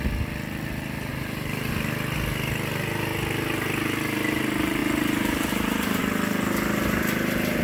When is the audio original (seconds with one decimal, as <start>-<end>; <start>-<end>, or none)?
0.0-1.1; 1.7-4.8; 6.0-7.6